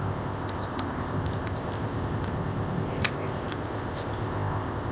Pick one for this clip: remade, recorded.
remade